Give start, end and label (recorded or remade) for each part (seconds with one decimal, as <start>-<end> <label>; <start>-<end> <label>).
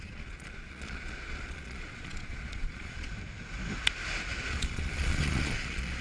0.0-3.1 remade; 3.1-4.4 recorded; 4.4-6.0 remade